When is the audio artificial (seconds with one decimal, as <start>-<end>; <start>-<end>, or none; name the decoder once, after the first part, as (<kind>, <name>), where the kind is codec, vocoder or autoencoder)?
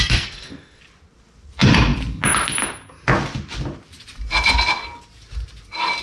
0.0-0.8 (codec, SNAC)